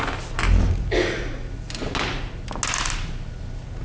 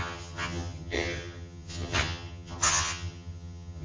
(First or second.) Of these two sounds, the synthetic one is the second